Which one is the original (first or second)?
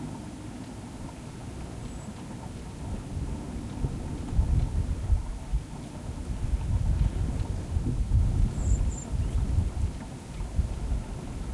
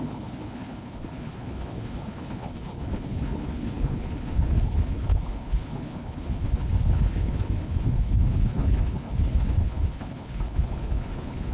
first